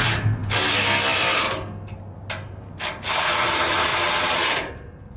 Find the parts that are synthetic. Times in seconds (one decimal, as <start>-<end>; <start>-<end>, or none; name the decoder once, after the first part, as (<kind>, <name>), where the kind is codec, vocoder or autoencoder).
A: 0.0-0.4 (vocoder, BigVGAN v2); 3.5-5.2